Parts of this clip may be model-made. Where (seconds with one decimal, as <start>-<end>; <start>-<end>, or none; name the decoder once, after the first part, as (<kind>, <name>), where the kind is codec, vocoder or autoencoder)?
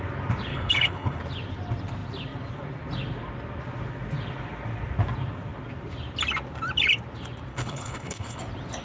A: 0.5-1.2 (codec, HILCodec); 7.5-8.4